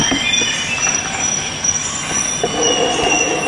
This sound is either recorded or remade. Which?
recorded